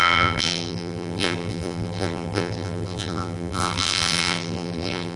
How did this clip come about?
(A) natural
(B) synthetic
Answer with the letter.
B